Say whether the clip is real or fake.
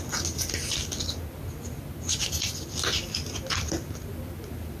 real